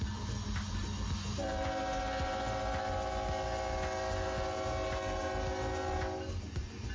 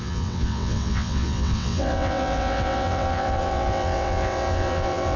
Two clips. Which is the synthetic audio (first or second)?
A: second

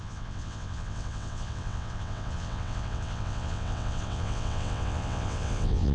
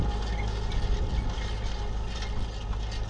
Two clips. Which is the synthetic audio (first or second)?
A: first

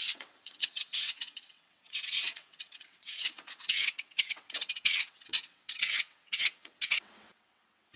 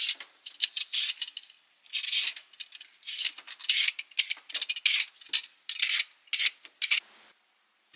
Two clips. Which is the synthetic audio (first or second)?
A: first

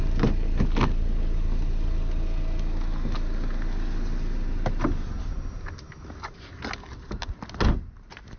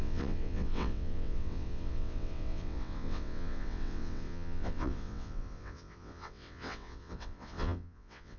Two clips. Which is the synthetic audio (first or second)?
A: second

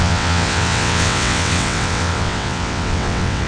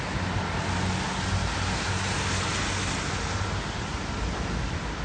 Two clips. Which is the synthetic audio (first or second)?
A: first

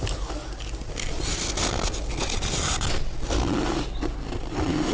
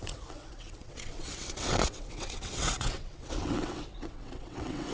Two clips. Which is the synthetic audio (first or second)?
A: second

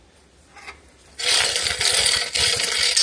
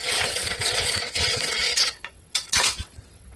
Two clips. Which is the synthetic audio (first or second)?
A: second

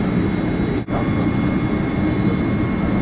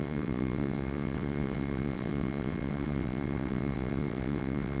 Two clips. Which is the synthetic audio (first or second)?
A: second